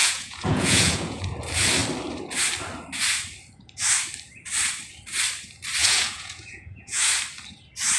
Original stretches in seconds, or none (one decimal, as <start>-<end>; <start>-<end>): 1.2-5.8; 7.1-8.0